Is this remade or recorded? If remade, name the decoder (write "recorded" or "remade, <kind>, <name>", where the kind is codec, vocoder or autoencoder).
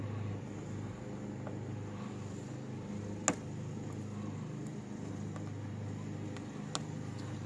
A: recorded